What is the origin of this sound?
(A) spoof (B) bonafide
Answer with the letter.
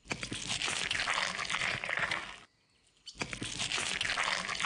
B